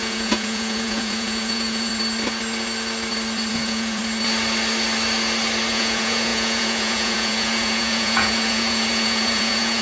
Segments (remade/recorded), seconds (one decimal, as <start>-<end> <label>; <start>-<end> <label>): 0.0-1.9 remade; 1.9-3.5 recorded; 3.5-4.0 remade; 4.0-5.7 recorded; 5.7-9.8 remade